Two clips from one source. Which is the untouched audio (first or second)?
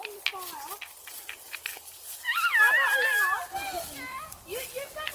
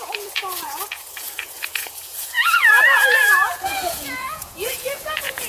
first